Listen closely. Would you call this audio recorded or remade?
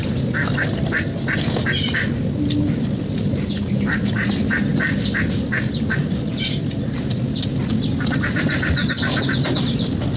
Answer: recorded